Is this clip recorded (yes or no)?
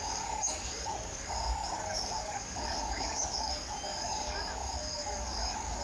no